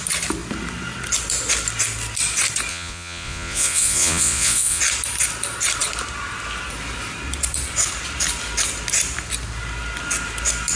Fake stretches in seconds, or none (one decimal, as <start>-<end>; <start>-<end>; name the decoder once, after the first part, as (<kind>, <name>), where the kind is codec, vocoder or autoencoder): 2.7-4.8 (vocoder, Vocos)